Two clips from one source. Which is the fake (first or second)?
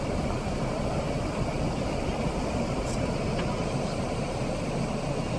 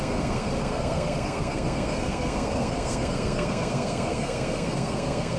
second